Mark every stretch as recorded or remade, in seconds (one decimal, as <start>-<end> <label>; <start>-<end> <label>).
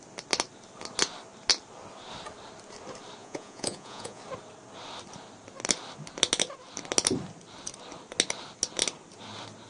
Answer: 0.0-3.2 recorded; 3.2-4.2 remade; 4.2-9.7 recorded